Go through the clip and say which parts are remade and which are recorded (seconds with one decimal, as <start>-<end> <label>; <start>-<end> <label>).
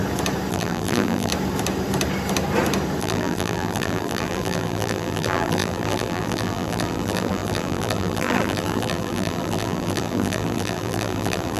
0.0-0.5 recorded; 0.5-1.3 remade; 1.3-3.0 recorded; 3.0-11.6 remade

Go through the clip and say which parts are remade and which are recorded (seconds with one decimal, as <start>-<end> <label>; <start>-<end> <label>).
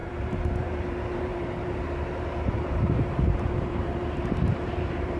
0.0-5.2 remade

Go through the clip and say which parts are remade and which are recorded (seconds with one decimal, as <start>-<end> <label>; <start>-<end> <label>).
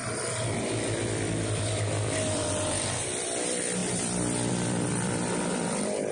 0.0-6.1 remade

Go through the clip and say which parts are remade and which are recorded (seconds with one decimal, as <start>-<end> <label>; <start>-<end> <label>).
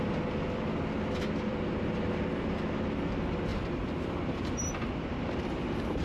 0.0-1.5 recorded; 1.5-2.6 remade; 2.6-3.5 recorded; 3.5-4.7 remade; 4.7-6.0 recorded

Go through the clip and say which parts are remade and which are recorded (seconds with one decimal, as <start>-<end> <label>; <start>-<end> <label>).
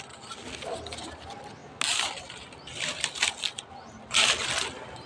0.0-5.1 recorded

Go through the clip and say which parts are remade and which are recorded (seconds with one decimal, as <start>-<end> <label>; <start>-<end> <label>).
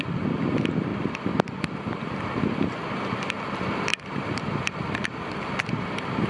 0.0-0.9 recorded; 0.9-2.1 remade; 2.1-3.9 recorded; 3.9-6.3 remade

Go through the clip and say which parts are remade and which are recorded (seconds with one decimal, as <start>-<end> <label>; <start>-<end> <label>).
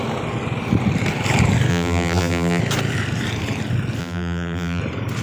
0.0-1.7 recorded; 1.7-2.6 remade; 2.6-4.0 recorded; 4.0-4.8 remade; 4.8-5.2 recorded